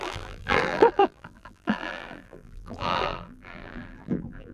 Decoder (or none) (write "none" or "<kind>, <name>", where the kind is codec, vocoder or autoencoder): vocoder, BigVGAN v2